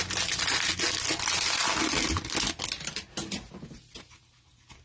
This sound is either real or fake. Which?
real